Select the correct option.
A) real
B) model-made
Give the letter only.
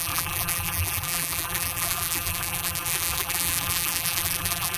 B